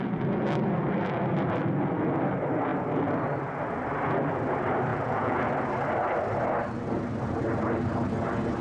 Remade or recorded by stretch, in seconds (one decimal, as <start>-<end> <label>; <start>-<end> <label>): 0.0-4.9 recorded; 4.9-5.5 remade; 5.5-8.6 recorded